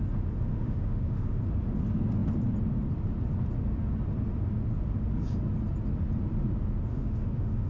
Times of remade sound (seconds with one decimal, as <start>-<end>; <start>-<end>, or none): 0.5-1.4; 6.9-7.7